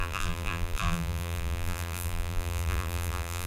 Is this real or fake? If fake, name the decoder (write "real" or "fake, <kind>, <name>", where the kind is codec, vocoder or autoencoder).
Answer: fake, vocoder, BigVGAN v2